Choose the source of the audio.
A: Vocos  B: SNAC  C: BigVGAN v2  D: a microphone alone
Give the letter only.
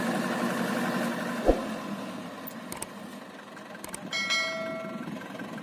D